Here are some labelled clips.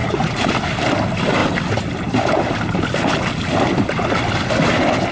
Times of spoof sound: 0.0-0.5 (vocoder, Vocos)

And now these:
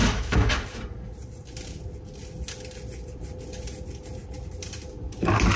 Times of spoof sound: 0.0-0.5 (autoencoder, DAC-VAE)